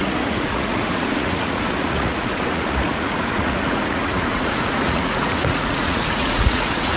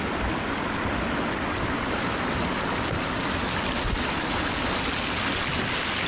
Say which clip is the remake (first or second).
first